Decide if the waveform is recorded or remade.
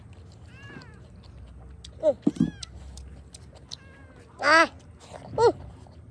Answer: recorded